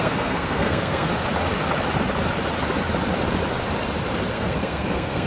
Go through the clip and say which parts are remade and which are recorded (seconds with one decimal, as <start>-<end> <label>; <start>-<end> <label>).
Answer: 0.0-1.1 remade; 1.1-4.3 recorded; 4.3-5.3 remade